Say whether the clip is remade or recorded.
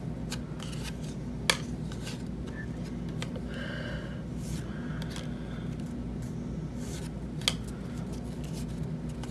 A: recorded